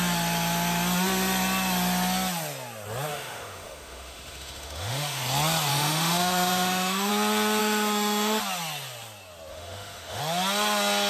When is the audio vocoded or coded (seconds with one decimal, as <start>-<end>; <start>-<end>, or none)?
3.1-5.2; 5.7-7.1; 7.6-8.4; 9.5-10.2